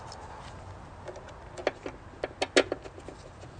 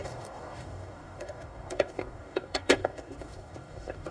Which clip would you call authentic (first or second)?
first